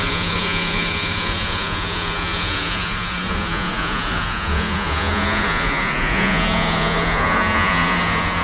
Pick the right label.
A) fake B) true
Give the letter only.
A